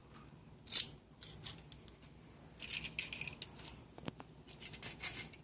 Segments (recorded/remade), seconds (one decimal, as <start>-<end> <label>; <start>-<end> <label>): 0.0-1.4 remade; 1.4-5.4 recorded